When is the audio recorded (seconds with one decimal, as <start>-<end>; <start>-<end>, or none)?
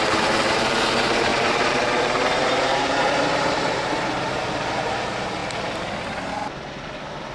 0.0-1.3; 5.0-7.3